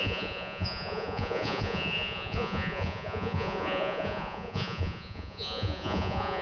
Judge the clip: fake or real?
fake